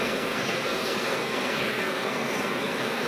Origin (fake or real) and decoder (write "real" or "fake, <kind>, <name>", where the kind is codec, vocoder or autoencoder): fake, codec, SNAC